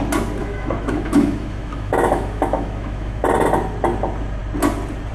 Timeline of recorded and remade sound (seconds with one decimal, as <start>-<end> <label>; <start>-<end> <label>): 0.0-0.4 recorded; 0.4-3.2 remade; 3.2-5.1 recorded